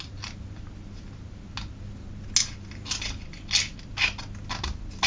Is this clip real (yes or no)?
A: yes